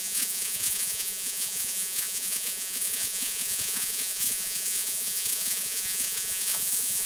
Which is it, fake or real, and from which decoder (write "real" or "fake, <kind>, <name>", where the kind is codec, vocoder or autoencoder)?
fake, vocoder, Vocos